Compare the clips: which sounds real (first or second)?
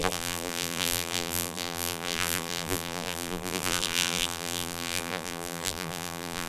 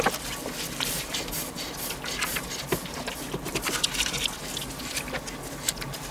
second